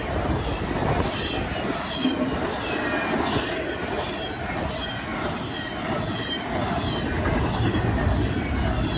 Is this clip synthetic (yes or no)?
no